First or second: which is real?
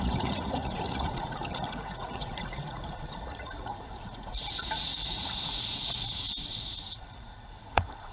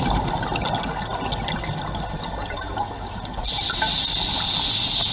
second